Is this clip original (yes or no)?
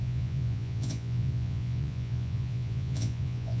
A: no